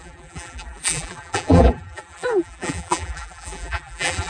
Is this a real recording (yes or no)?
no